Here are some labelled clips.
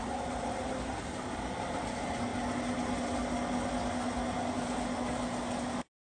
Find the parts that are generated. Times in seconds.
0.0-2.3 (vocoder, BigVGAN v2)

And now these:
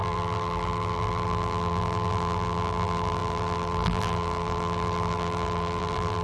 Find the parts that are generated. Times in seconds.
0.0-6.2 (vocoder, BigVGAN v2)